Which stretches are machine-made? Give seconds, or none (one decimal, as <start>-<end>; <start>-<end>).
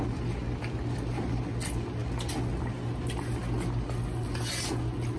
0.4-1.4